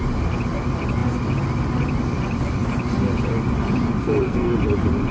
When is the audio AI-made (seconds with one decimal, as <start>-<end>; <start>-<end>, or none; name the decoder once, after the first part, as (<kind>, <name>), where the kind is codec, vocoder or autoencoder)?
4.0-4.5 (codec, SNAC)